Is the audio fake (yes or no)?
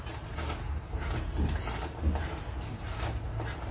no